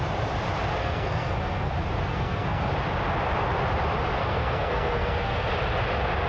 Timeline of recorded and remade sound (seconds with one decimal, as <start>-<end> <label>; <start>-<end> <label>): 0.0-0.8 recorded; 0.8-1.7 remade; 1.7-2.1 recorded; 2.1-2.7 remade; 2.7-4.2 recorded; 4.2-5.5 remade; 5.5-6.3 recorded